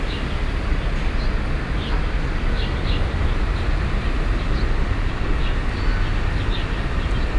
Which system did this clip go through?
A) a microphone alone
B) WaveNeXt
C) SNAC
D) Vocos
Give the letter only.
A